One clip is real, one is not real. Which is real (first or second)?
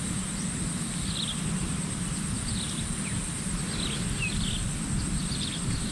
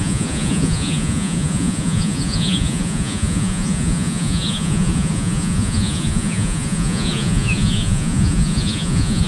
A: first